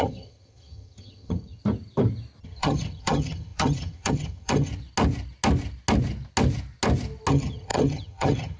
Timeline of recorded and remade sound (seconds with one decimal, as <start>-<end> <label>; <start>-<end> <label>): 0.0-1.6 remade; 1.6-2.4 recorded; 2.4-4.7 remade; 4.7-7.3 recorded; 7.3-8.6 remade